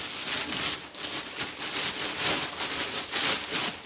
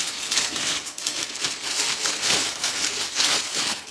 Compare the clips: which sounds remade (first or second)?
second